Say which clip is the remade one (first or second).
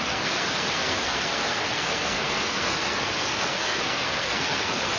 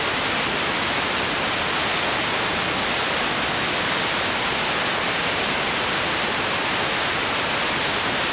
first